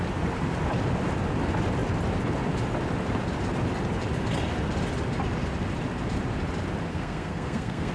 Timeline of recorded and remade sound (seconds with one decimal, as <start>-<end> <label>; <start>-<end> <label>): 0.0-6.9 recorded; 6.9-7.9 remade